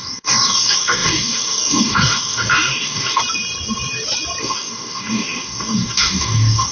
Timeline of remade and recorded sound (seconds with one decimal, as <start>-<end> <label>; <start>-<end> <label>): 0.0-3.2 remade; 3.2-4.4 recorded; 4.4-6.7 remade